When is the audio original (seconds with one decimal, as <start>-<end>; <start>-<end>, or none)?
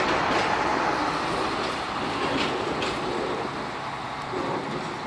0.0-5.1